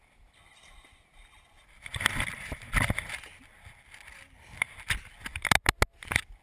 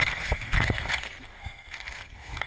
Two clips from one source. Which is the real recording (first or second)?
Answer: first